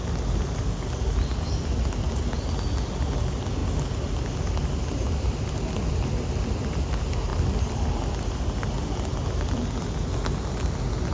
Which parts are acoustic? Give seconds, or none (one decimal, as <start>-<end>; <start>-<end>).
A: 0.0-11.1